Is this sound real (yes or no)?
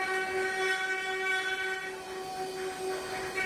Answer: yes